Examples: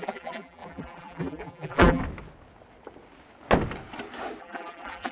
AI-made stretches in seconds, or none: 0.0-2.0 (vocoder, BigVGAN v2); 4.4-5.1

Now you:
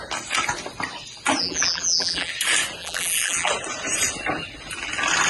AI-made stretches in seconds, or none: 1.4-2.3 (vocoder, BigVGAN v2); 2.8-3.5

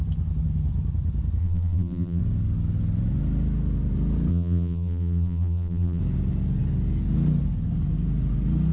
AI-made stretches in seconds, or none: 1.4-2.2 (vocoder, BigVGAN v2); 4.3-6.0

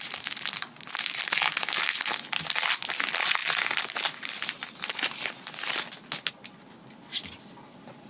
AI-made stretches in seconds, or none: none

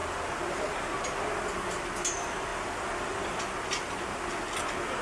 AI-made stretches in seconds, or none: 2.5-3.4 (vocoder, BigVGAN v2)